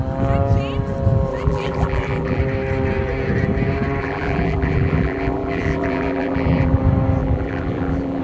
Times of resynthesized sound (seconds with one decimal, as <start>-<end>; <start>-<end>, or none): 1.3-2.4; 4.0-6.8; 7.2-8.2